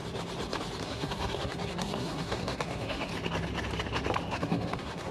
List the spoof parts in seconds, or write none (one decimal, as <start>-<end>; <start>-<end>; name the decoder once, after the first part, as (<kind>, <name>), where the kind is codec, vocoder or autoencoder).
0.8-3.1 (codec, SNAC); 4.3-5.1